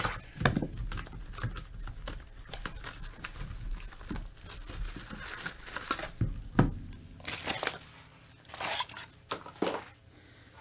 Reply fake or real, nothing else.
real